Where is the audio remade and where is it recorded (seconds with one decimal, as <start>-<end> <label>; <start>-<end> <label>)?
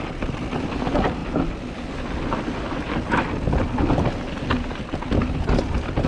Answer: 0.0-6.1 recorded